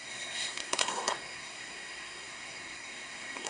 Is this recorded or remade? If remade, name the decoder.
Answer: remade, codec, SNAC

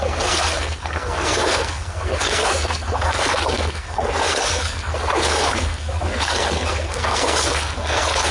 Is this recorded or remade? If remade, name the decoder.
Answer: remade, codec, SNAC